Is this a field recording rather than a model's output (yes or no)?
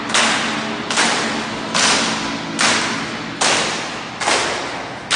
yes